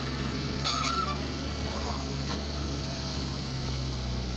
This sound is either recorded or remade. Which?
remade